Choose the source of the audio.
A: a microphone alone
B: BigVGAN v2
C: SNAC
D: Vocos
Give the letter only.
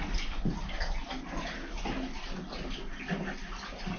A